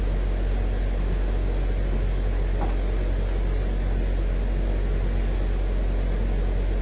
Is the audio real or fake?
real